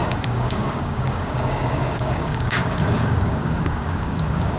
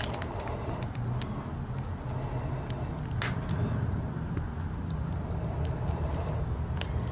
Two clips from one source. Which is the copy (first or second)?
first